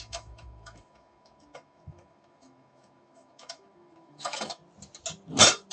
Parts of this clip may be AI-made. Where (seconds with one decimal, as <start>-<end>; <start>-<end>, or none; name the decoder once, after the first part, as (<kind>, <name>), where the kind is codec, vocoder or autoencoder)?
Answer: 0.0-4.6 (autoencoder, DAC-VAE)